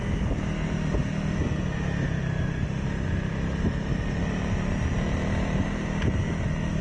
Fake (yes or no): no